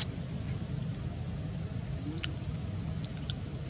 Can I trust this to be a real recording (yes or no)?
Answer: yes